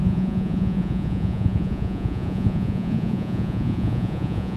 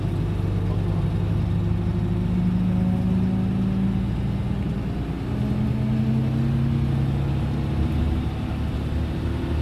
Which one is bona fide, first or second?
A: second